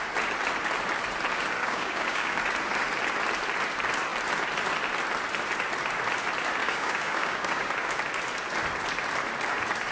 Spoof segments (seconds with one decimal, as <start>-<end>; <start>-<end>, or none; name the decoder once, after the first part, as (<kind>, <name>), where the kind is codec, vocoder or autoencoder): 1.6-2.4 (codec, DAC); 6.6-7.7